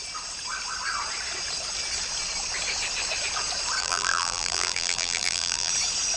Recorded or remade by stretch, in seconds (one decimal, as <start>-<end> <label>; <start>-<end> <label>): 0.0-3.8 recorded; 3.8-5.7 remade; 5.7-6.2 recorded